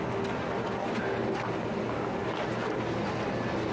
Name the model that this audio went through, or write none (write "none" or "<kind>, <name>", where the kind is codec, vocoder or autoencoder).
none